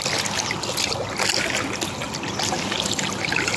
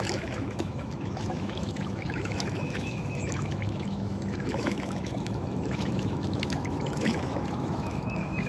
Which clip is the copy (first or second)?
second